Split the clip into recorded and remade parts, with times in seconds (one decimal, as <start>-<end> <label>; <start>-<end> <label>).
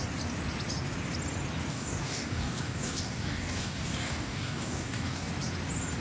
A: 0.0-1.7 recorded; 1.7-5.3 remade; 5.3-6.0 recorded